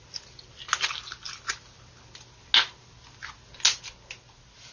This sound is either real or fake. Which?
real